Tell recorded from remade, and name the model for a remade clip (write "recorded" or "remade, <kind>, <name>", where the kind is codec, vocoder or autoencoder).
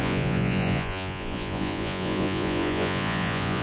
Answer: remade, vocoder, Vocos